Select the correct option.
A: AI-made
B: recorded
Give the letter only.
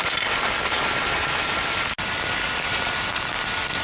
B